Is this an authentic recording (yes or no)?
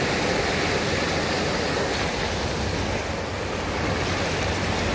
yes